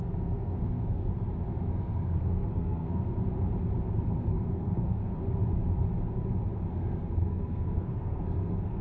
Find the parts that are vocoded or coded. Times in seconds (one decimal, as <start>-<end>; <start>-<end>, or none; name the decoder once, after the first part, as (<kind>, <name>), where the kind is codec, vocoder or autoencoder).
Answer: 0.0-1.1 (codec, SNAC); 1.7-3.2; 4.3-5.0; 6.7-8.8